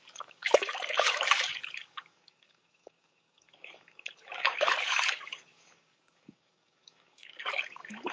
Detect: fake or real fake